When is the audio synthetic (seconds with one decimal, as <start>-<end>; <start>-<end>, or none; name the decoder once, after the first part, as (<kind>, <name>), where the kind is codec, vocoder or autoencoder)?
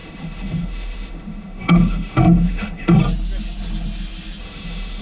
0.0-3.0 (autoencoder, DAC-VAE); 4.4-5.0